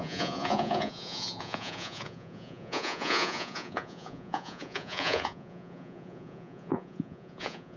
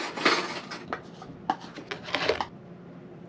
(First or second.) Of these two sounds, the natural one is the second